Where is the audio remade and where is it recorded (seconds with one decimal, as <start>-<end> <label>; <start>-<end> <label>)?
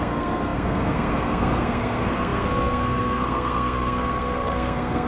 0.0-5.1 remade